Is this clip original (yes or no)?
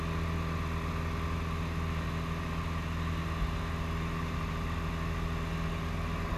yes